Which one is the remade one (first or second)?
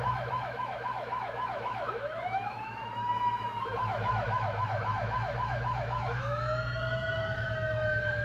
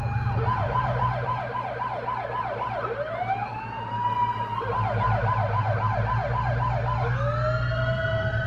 first